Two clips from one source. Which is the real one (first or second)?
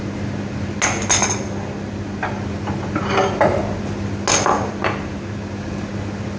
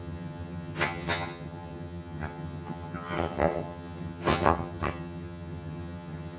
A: first